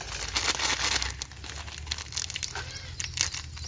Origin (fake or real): real